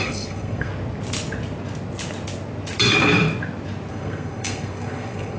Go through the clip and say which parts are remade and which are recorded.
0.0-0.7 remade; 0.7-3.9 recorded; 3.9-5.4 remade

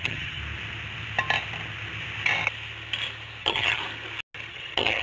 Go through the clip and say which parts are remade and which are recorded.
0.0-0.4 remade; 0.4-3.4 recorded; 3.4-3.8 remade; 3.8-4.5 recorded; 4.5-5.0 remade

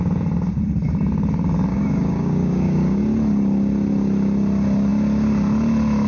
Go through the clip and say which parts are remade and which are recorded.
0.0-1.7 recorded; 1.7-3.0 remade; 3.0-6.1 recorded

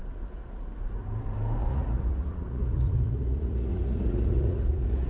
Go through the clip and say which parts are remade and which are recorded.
0.0-1.6 recorded; 1.6-5.1 remade

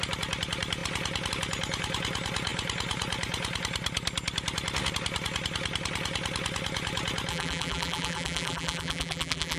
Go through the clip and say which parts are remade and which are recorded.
0.0-7.3 recorded; 7.3-9.6 remade

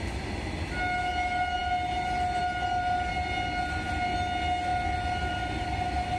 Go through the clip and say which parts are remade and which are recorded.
0.0-6.2 recorded

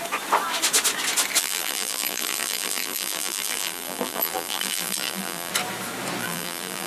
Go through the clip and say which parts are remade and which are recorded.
0.0-1.4 recorded; 1.4-5.5 remade; 5.5-6.2 recorded; 6.2-6.9 remade